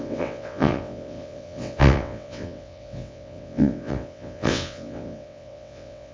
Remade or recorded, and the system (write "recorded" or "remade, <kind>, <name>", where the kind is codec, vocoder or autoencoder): remade, vocoder, WaveNeXt